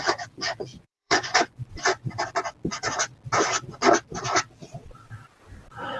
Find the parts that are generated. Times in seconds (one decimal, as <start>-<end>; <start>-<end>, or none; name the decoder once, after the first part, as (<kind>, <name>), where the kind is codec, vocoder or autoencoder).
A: 0.7-2.3 (vocoder, Vocos)